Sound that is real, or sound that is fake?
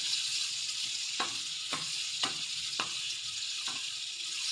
fake